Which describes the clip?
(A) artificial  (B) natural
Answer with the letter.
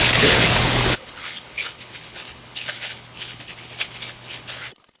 A